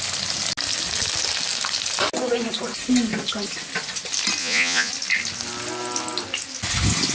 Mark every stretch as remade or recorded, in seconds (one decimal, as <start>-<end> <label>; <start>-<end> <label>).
0.0-4.4 recorded; 4.4-4.9 remade; 4.9-7.1 recorded